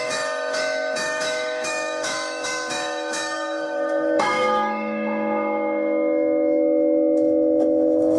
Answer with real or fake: fake